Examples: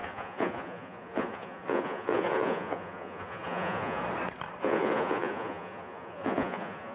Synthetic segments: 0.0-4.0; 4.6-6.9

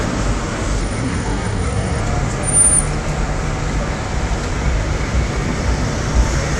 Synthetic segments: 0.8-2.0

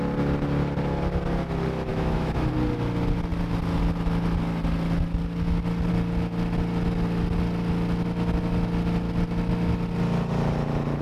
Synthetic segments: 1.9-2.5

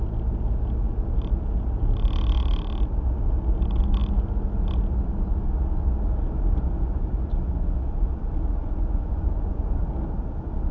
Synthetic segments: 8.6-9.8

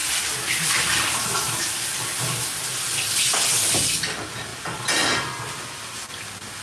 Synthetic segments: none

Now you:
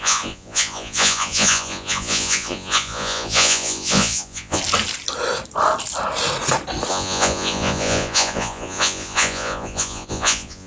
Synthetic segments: 0.0-4.6; 6.9-10.7

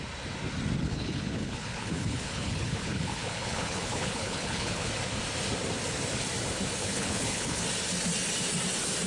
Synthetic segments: 0.8-4.9; 6.8-7.6

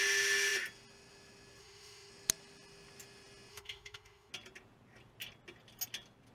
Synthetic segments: 1.6-2.1; 3.5-4.3